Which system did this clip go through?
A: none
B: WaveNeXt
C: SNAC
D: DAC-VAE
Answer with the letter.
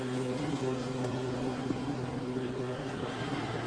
C